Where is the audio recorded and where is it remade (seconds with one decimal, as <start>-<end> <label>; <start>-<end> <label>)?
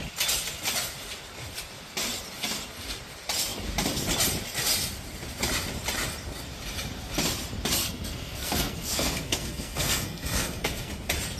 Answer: 0.0-7.8 recorded; 7.8-10.9 remade; 10.9-11.4 recorded